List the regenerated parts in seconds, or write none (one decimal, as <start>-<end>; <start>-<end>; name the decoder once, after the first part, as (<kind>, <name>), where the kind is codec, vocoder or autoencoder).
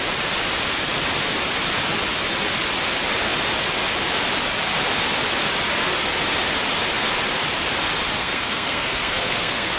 8.2-9.8 (codec, SNAC)